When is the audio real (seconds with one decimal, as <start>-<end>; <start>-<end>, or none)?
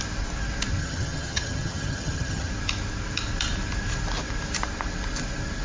0.0-0.8; 2.5-5.6